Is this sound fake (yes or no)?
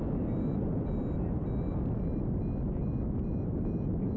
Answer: no